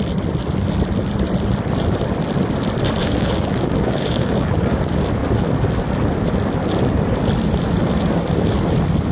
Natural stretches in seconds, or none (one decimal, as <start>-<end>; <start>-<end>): 0.0-3.0; 4.8-9.1

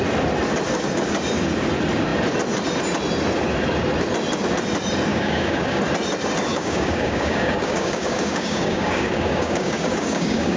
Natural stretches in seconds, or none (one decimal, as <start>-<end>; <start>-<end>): 0.0-5.1; 5.8-6.5

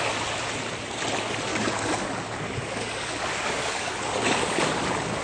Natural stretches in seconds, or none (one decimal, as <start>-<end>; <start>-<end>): 0.0-1.5; 4.6-5.2

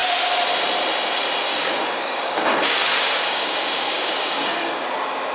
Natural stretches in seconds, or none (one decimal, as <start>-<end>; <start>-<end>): 0.0-1.5; 4.7-5.3

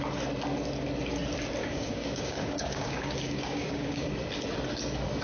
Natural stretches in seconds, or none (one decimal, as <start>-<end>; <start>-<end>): 0.0-1.6; 4.1-5.2